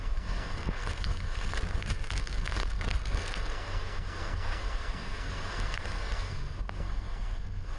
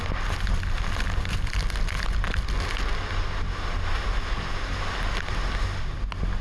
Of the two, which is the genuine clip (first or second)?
second